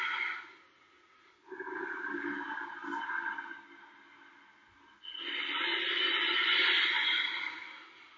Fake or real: real